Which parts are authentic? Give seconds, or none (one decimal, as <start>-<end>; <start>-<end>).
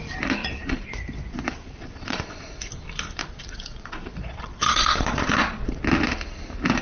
0.0-0.4; 2.7-3.2; 5.8-6.8